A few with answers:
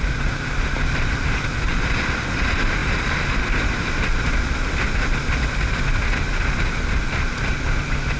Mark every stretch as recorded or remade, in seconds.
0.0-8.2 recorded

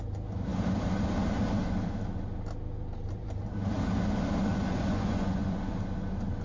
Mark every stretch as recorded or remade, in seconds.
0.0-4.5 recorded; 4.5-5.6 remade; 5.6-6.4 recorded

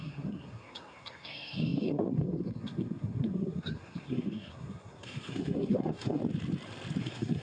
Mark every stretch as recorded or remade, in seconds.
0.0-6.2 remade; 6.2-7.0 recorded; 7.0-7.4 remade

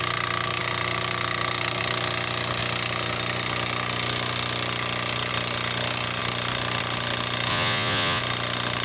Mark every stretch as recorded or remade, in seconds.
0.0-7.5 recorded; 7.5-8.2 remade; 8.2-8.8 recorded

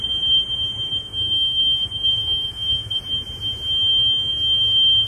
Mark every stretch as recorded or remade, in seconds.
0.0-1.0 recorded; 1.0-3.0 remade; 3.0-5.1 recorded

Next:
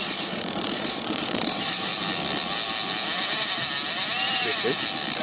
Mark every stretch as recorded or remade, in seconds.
0.0-1.9 remade; 1.9-5.2 recorded